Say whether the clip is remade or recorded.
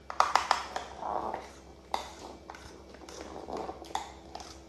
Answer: recorded